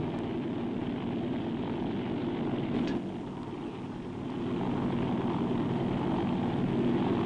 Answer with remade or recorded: recorded